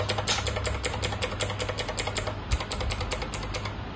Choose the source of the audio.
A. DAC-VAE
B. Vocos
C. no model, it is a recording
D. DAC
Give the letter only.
C